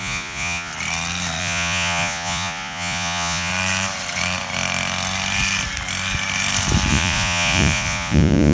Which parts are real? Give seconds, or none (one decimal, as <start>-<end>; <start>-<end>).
0.7-1.4; 3.5-6.9